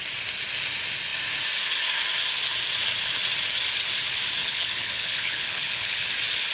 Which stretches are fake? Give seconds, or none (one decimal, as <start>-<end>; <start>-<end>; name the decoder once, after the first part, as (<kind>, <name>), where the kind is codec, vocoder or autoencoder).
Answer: 4.4-6.0 (codec, HILCodec)